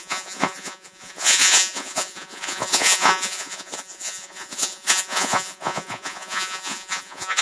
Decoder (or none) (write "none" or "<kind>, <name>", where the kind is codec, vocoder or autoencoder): vocoder, Vocos